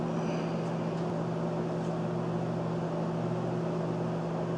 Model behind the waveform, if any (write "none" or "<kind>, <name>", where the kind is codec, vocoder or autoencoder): none